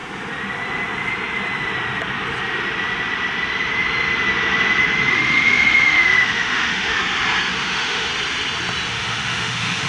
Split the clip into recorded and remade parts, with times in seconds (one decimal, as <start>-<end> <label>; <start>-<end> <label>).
0.0-5.1 recorded; 5.1-7.0 remade; 7.0-7.5 recorded; 7.5-8.1 remade; 8.1-8.9 recorded; 8.9-9.9 remade